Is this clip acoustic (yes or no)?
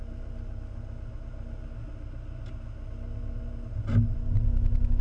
yes